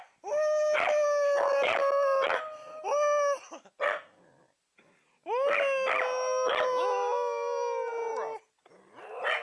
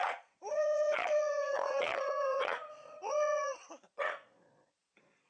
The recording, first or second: first